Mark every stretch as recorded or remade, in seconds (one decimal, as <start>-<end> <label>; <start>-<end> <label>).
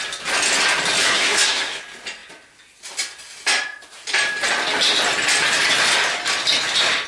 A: 0.0-1.0 recorded; 1.0-1.8 remade; 1.8-7.1 recorded